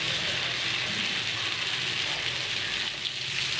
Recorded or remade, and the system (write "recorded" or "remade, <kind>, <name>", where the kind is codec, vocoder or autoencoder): recorded